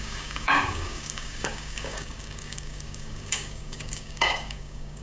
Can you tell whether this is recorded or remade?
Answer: remade